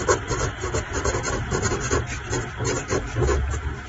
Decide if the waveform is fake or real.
real